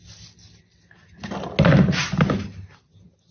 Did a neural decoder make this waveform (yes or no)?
no